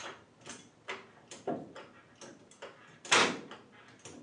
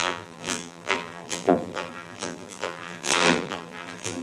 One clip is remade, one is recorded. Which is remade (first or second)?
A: second